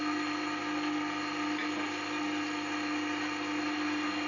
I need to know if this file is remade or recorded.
recorded